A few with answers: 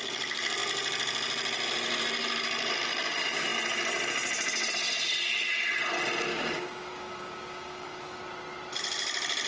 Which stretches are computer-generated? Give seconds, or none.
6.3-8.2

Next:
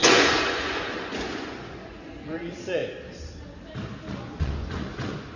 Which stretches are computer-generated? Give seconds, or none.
0.0-2.8; 4.1-5.4

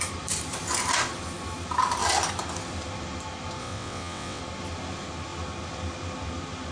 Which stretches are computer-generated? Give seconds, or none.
3.6-4.4

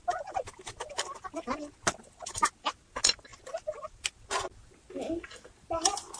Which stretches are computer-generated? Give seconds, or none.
none

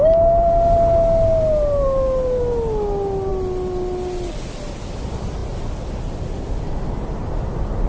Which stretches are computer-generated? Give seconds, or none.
none

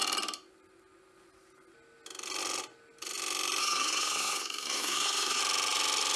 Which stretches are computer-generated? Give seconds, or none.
3.6-5.4

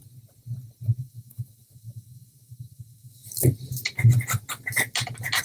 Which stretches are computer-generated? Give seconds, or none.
1.0-3.2